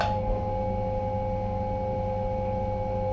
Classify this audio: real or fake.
real